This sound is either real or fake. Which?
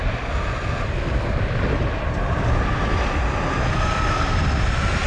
real